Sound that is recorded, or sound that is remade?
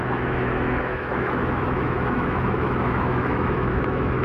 remade